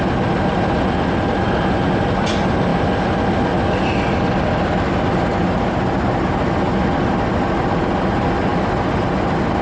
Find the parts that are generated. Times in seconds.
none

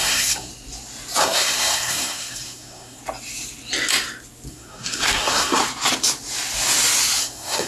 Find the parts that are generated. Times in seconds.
0.0-0.5; 1.2-3.0; 4.5-5.6; 7.2-7.7

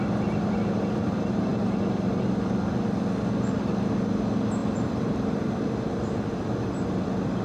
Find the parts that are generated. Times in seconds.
4.6-6.5

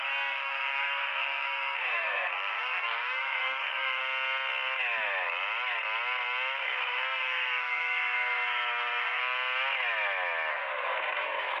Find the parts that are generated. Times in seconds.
0.0-4.0; 6.6-9.2; 10.5-11.6

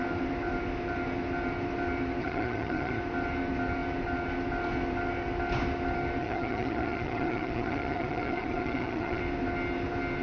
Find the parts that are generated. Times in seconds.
2.2-3.0; 6.2-9.2